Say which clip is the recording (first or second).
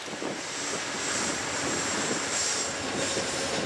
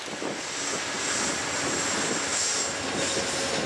second